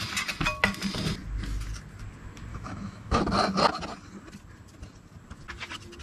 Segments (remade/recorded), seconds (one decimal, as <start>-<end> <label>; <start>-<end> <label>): 0.0-2.5 recorded; 2.5-3.2 remade; 3.2-6.0 recorded